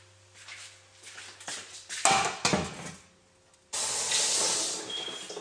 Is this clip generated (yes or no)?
no